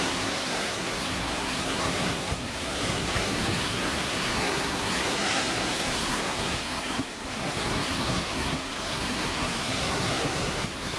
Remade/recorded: remade